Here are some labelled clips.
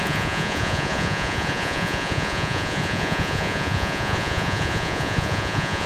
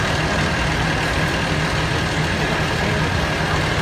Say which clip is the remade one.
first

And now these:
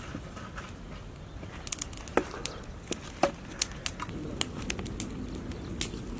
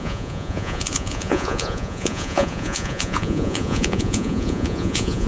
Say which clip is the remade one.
second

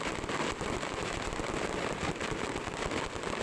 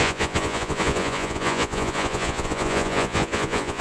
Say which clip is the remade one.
second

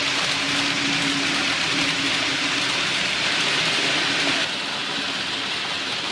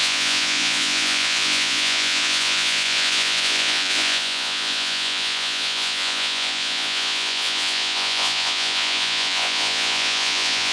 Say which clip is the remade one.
second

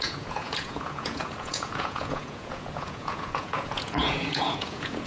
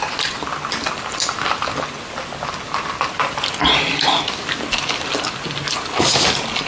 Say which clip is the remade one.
first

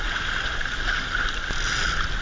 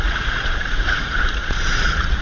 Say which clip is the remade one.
second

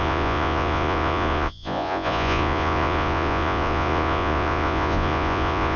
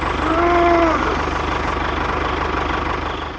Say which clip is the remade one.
first